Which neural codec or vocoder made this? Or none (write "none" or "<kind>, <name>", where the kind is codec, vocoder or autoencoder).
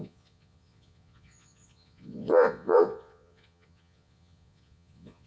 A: vocoder, Vocos